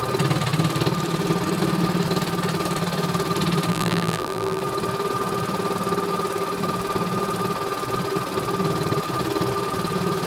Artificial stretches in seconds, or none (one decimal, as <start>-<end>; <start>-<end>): 3.7-4.6